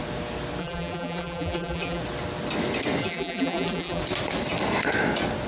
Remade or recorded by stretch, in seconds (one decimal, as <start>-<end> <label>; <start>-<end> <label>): 0.0-0.6 recorded; 0.6-2.0 remade; 2.0-3.0 recorded; 3.0-4.0 remade; 4.0-5.5 recorded